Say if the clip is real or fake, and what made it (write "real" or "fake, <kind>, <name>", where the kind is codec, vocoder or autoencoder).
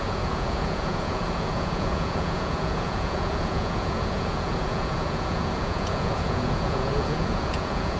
fake, vocoder, Vocos